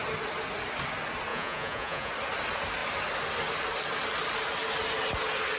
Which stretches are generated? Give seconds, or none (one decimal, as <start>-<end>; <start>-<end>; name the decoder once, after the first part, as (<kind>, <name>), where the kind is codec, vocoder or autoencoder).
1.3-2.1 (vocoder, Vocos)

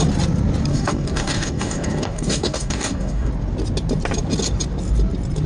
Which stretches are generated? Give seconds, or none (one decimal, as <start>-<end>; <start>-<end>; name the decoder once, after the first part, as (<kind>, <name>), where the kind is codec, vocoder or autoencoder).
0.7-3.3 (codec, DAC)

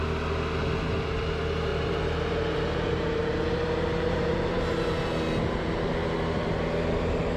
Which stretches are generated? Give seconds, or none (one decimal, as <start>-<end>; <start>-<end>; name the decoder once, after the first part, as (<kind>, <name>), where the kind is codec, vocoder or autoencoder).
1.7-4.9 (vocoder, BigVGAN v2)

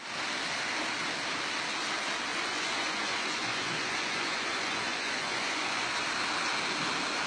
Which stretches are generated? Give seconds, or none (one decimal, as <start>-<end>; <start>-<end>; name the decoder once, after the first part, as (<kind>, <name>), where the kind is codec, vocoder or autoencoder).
2.3-5.9 (vocoder, Vocos)